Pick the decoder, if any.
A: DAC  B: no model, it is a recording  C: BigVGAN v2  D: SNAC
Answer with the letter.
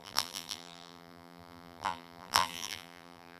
C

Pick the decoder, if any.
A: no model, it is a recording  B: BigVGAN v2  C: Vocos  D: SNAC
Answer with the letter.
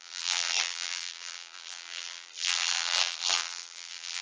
B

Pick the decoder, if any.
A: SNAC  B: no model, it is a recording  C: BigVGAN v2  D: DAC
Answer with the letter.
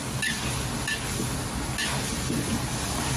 B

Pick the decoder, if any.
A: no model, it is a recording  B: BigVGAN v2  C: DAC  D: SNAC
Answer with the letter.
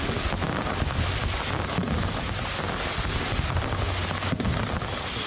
A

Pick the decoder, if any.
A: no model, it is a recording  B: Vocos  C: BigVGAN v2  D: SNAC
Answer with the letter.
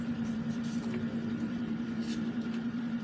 C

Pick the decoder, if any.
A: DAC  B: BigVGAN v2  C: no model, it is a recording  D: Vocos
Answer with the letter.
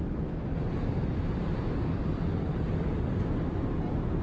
C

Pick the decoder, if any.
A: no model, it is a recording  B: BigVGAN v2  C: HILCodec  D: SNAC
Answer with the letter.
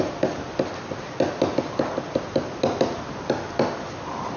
A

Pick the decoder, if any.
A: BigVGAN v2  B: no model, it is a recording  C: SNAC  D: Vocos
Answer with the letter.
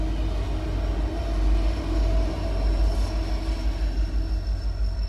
B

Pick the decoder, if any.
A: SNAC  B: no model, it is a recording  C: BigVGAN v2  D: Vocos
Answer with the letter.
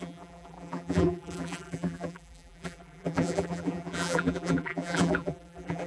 C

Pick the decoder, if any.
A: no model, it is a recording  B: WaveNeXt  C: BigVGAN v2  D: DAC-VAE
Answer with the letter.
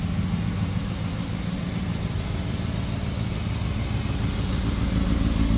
A